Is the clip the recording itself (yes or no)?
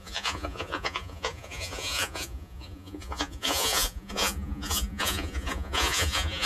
no